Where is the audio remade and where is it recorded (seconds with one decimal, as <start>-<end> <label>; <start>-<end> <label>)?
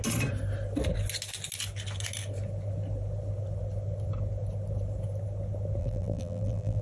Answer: 0.0-5.8 recorded; 5.8-6.8 remade